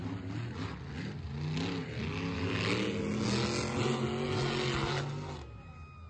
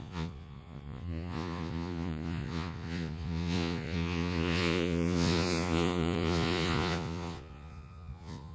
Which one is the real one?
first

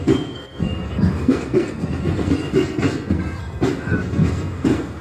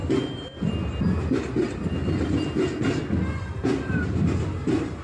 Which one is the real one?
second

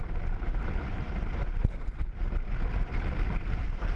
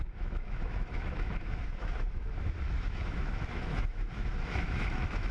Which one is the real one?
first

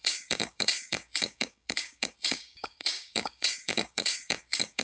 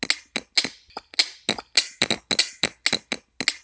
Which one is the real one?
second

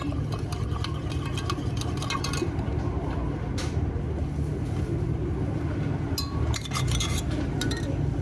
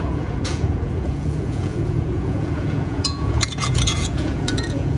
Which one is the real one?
first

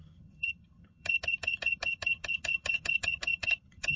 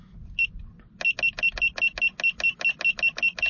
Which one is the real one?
second